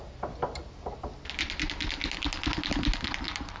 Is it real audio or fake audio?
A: real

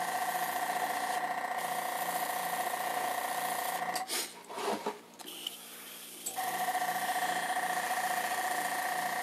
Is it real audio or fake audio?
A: real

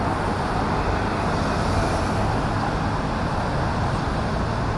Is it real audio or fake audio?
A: real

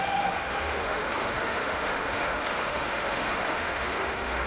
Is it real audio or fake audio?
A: fake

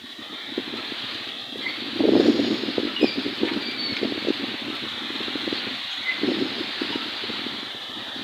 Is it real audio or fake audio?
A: real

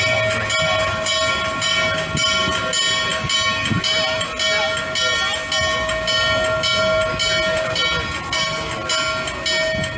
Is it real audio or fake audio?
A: real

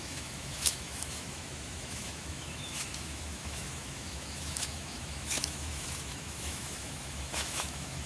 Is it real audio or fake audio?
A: fake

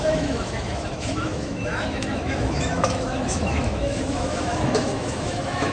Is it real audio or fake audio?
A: fake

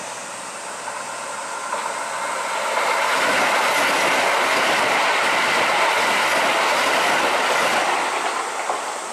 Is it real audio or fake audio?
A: real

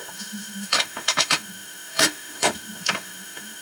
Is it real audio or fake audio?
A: fake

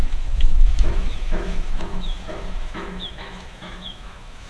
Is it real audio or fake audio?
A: fake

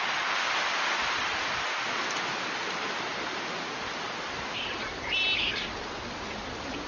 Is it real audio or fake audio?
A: real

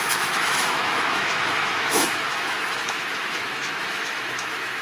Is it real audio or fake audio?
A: fake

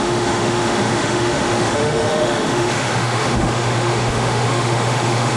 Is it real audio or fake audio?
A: fake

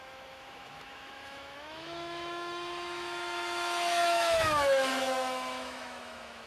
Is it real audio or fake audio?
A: fake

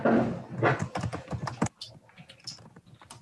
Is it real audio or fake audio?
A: real